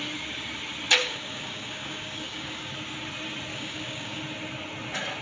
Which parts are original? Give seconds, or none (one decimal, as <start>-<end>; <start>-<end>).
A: 0.0-1.0; 2.7-3.5; 4.2-5.2